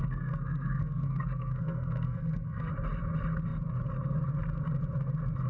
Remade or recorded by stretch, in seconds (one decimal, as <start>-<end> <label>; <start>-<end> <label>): 0.0-2.7 remade; 2.7-5.5 recorded